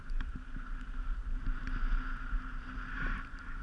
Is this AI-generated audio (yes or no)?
no